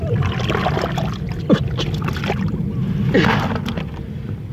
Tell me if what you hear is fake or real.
real